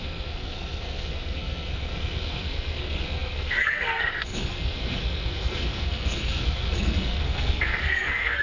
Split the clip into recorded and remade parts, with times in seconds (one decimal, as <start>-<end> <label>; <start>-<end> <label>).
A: 0.0-8.4 remade